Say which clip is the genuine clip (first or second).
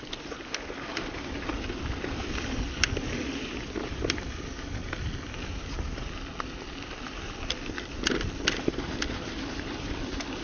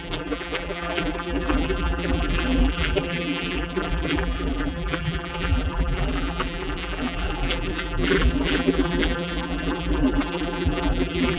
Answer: first